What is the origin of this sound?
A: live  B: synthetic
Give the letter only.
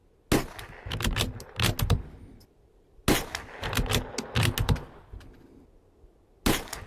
A